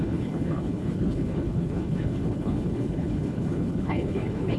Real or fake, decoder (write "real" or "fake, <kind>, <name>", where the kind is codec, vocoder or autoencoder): fake, codec, HILCodec